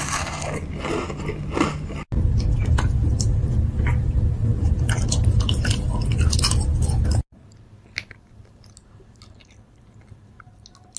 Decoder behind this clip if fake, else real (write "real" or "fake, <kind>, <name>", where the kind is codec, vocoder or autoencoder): real